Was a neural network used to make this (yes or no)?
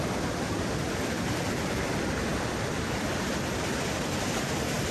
yes